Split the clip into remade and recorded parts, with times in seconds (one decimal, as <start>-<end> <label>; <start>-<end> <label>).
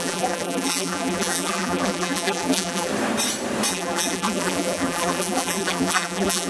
0.0-2.9 remade; 2.9-3.7 recorded; 3.7-6.5 remade